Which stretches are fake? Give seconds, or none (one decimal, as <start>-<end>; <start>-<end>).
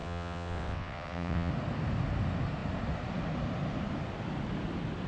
0.0-1.5